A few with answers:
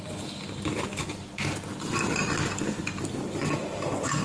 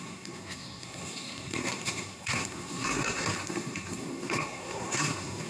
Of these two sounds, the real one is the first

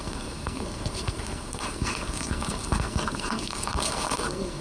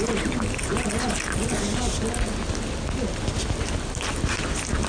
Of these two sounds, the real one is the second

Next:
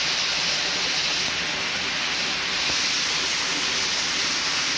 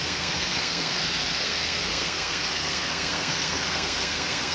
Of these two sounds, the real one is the first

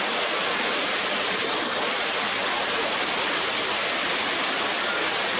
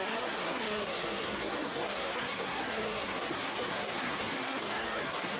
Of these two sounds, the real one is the first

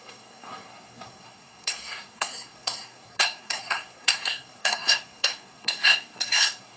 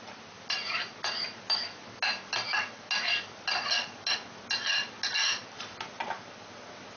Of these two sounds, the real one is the second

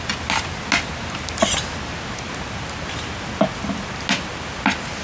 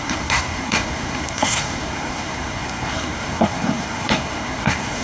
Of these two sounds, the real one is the first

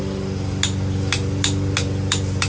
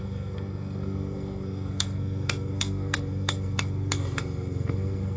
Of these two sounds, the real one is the first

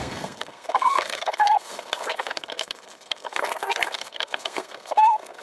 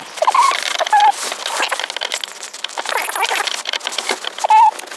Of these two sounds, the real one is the second